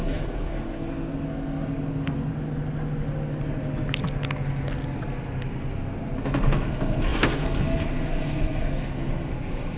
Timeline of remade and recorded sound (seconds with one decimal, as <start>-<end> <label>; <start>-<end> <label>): 0.0-2.3 remade; 2.3-6.2 recorded; 6.2-9.8 remade